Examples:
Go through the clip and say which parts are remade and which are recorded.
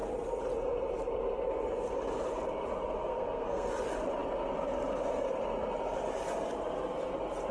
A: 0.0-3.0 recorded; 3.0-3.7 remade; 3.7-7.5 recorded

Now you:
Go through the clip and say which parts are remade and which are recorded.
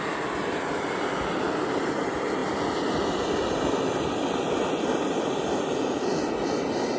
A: 0.0-7.0 recorded